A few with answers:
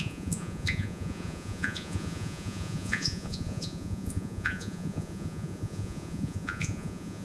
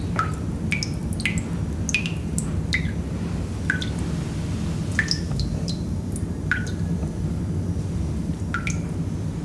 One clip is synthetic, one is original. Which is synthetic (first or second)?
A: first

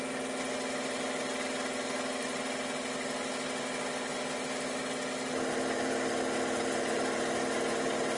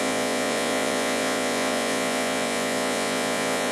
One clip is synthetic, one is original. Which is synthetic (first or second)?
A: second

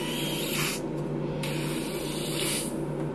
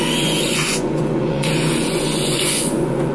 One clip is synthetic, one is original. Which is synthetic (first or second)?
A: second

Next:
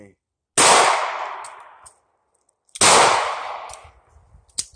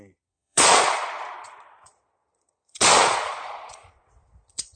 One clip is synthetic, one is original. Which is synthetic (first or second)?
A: second